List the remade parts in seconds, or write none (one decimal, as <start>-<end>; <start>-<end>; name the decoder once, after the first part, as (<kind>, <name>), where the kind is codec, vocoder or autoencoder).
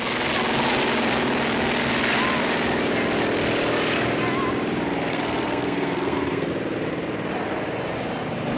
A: 5.1-6.5 (codec, SNAC)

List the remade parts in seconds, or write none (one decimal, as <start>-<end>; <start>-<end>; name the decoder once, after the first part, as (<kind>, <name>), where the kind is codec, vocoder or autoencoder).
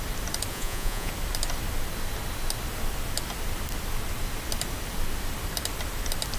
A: 0.5-1.1 (vocoder, Vocos)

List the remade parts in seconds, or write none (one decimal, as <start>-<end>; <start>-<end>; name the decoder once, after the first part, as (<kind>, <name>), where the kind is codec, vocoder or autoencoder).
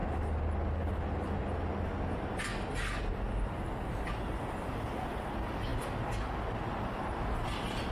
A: none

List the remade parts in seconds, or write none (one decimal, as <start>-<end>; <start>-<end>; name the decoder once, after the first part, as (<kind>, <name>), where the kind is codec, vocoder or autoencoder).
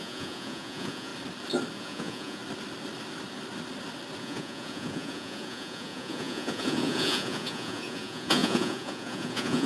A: 0.0-1.1 (vocoder, Vocos); 1.8-2.4; 4.2-9.7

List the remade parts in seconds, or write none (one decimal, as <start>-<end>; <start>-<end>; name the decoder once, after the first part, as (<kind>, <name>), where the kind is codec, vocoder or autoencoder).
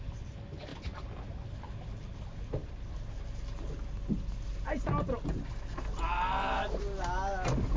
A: none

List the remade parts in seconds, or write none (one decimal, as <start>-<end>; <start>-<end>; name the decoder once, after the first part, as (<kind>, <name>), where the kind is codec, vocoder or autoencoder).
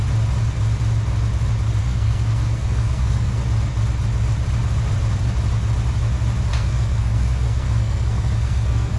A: 1.8-3.4 (codec, SNAC); 6.5-9.0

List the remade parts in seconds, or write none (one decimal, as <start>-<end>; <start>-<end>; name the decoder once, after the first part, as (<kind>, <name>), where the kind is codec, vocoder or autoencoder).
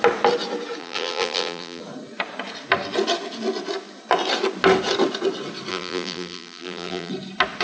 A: 0.8-1.8 (vocoder, BigVGAN v2); 5.7-7.1